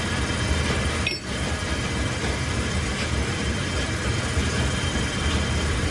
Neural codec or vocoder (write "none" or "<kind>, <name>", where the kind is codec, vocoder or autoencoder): none